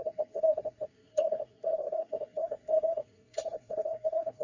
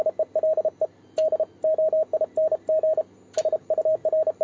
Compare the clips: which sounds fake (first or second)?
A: first